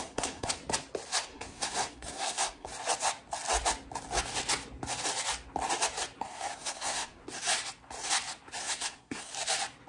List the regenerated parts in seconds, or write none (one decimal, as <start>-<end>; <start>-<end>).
0.0-0.6; 1.2-2.7; 6.2-7.2; 8.6-9.3